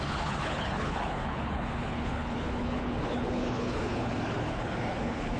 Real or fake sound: fake